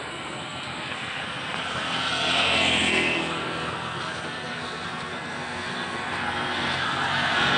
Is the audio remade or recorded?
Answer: remade